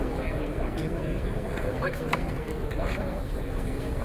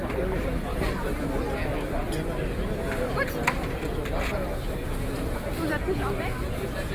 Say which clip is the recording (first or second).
second